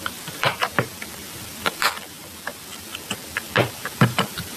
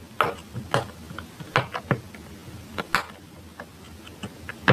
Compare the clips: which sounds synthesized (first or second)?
first